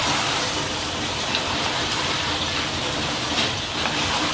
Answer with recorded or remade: remade